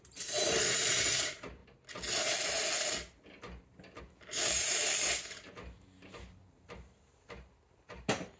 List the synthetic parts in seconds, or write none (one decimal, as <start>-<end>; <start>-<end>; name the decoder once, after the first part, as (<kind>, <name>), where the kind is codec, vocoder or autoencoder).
0.0-1.6 (vocoder, BigVGAN v2); 4.0-4.8; 6.4-8.4